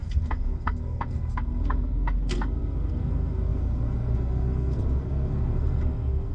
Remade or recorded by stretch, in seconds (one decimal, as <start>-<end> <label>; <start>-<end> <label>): 0.0-6.3 remade